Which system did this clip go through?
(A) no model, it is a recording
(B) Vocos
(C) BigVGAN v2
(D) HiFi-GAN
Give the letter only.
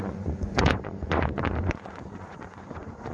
B